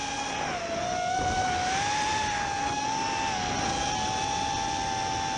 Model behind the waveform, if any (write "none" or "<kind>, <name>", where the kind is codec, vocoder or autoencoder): none